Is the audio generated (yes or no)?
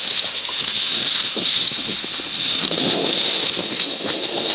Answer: yes